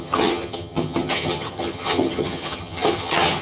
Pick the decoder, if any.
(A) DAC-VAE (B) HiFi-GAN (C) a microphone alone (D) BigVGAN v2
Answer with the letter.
B